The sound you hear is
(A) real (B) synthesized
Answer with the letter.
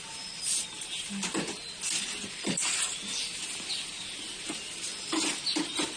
A